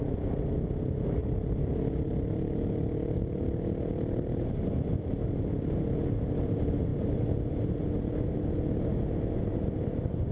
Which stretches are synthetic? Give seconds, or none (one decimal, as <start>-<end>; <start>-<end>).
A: none